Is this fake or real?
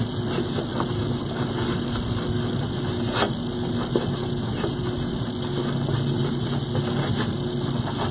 real